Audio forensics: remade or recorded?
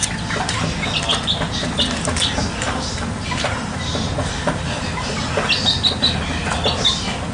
recorded